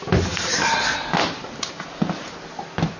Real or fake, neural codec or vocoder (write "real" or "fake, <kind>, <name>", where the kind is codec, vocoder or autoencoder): real